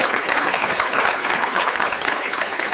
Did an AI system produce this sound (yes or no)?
yes